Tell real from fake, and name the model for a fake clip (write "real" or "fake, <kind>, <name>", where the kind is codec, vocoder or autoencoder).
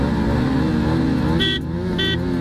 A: real